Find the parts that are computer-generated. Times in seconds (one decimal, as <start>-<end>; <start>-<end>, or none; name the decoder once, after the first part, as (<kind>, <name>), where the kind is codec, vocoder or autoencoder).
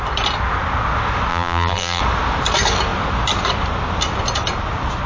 1.3-2.0 (vocoder, BigVGAN v2)